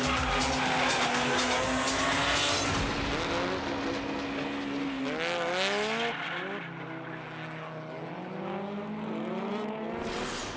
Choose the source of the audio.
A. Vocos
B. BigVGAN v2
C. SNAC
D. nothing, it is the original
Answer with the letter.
D